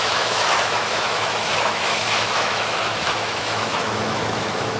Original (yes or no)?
no